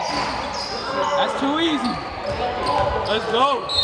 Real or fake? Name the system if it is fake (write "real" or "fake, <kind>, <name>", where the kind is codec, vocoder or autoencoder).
real